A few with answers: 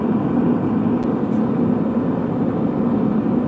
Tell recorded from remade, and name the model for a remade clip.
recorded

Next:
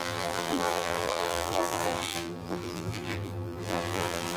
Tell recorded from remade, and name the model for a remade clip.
remade, vocoder, BigVGAN v2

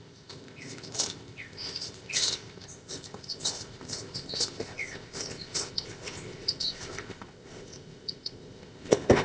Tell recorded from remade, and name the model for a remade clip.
remade, codec, ZipCodec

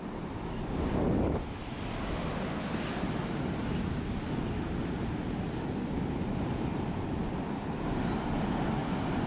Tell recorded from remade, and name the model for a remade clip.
recorded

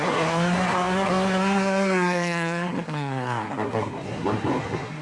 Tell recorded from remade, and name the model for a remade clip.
remade, codec, SNAC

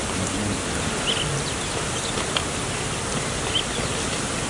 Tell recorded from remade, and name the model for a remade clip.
recorded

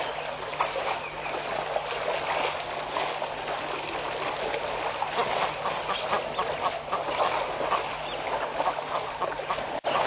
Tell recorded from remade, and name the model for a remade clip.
recorded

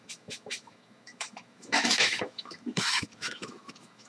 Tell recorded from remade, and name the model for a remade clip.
remade, autoencoder, DAC-VAE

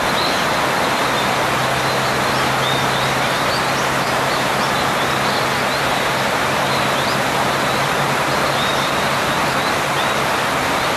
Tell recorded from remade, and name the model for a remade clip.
recorded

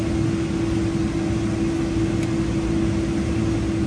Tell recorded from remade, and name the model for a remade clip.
recorded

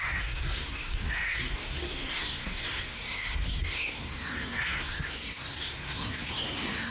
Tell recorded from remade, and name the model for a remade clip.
remade, codec, SNAC